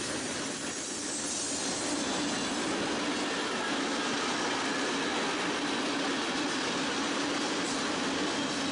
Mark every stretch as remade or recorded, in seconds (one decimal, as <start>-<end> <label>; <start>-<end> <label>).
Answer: 0.0-8.7 recorded